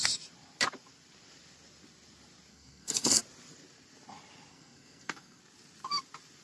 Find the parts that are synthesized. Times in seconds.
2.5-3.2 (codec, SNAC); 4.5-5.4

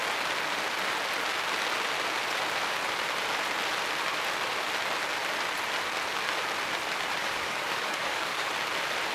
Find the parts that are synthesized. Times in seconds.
7.2-8.5 (codec, DAC)

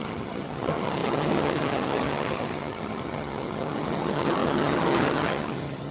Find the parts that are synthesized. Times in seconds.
0.0-5.9 (vocoder, HiFi-GAN)

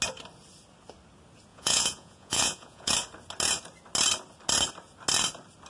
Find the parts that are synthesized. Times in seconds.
1.5-2.9 (vocoder, Vocos)